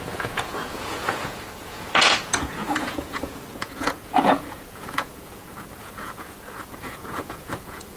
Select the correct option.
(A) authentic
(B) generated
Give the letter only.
B